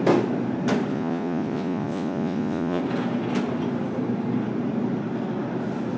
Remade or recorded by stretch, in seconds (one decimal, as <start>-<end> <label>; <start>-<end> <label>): 0.0-0.9 recorded; 0.9-2.8 remade; 2.8-6.0 recorded